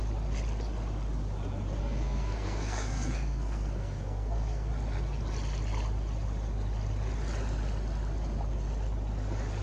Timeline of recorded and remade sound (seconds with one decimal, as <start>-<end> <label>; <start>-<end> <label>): 0.0-1.8 recorded; 1.8-4.7 remade; 4.7-9.6 recorded